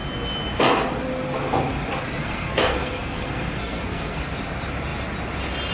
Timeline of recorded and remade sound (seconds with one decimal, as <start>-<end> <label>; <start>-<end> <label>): 0.0-2.2 recorded; 2.2-4.2 remade; 4.2-5.7 recorded